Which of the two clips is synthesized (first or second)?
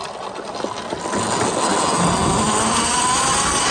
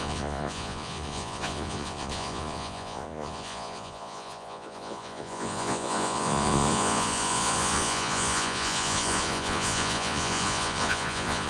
second